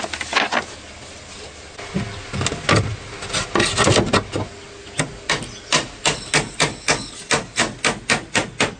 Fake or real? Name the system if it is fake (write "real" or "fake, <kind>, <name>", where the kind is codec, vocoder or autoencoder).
real